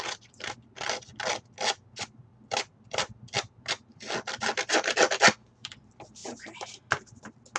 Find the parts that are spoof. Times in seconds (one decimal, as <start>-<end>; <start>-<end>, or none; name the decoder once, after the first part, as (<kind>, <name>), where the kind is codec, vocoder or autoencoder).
0.0-1.1 (vocoder, BigVGAN v2); 2.7-6.2